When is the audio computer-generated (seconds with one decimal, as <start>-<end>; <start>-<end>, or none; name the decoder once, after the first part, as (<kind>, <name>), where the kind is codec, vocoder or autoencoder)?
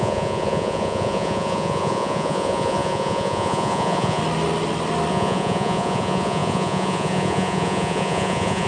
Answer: 0.0-4.2 (vocoder, Vocos); 5.1-8.7